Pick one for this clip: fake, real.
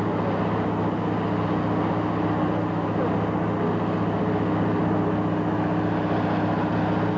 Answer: real